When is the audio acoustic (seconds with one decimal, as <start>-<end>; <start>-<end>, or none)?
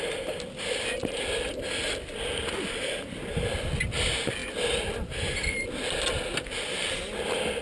0.0-7.6